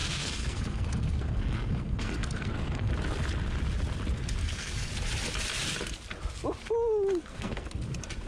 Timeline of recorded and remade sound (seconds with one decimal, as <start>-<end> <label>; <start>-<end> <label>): 0.0-2.9 remade; 2.9-4.4 recorded; 4.4-4.9 remade; 4.9-7.2 recorded; 7.2-7.8 remade; 7.8-8.3 recorded